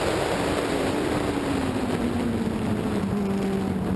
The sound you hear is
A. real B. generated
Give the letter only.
A